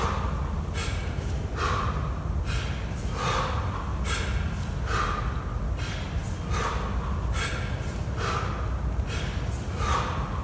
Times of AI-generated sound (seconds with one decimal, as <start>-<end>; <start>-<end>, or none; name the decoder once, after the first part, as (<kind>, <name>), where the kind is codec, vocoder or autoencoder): none